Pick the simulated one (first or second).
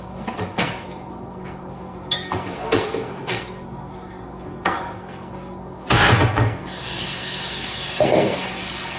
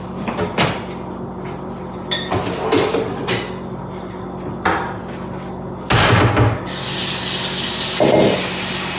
first